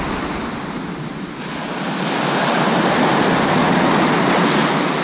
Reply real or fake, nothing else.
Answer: real